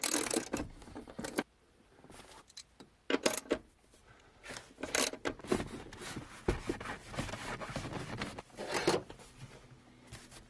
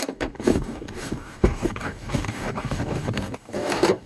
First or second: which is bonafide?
first